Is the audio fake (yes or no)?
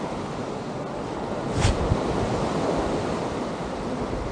no